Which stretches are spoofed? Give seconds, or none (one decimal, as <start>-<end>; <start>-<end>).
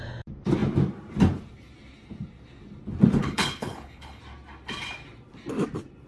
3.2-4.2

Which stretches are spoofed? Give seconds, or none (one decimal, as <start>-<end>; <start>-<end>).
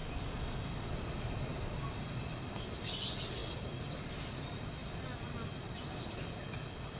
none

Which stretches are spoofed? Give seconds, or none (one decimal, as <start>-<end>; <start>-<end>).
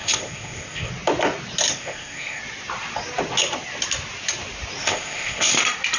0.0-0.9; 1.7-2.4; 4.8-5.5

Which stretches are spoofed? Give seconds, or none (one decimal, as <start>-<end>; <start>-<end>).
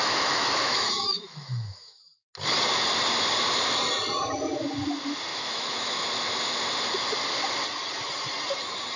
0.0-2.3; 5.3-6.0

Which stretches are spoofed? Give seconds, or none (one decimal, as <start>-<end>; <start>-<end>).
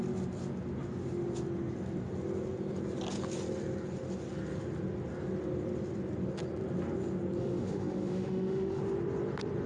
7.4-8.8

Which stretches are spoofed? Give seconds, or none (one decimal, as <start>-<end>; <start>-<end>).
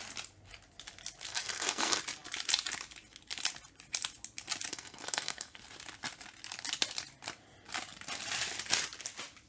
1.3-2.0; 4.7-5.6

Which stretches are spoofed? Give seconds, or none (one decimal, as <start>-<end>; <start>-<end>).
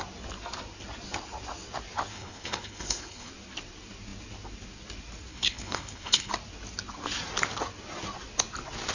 2.1-3.3; 5.3-6.3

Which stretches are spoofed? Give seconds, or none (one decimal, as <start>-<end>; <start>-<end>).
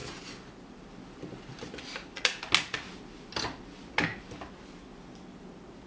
none